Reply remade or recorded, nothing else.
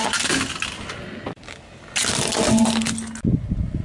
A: recorded